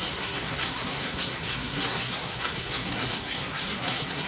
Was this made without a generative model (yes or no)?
no